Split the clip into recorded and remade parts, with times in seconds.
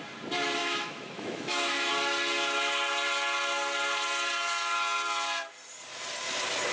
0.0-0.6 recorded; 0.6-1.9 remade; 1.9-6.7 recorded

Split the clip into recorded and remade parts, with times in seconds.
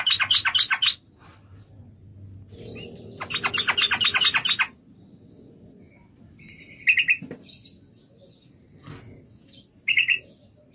0.0-10.7 recorded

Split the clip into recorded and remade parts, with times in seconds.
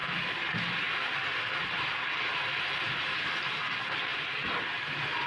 0.0-5.3 recorded